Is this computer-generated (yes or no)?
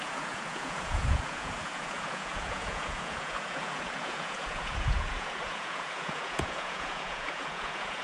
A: yes